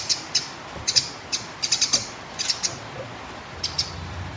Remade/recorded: recorded